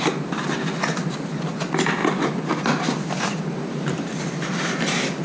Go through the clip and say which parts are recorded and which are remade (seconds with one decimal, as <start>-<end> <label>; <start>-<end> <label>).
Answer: 0.0-5.2 recorded